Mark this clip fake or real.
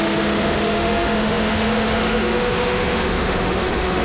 fake